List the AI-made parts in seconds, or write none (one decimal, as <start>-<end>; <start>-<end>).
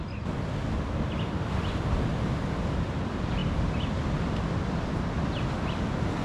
none